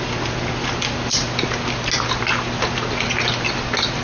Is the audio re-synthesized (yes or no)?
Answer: no